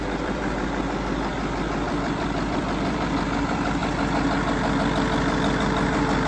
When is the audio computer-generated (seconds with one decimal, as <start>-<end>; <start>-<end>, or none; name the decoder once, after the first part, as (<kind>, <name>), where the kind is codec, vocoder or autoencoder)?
0.0-3.8 (vocoder, BigVGAN v2)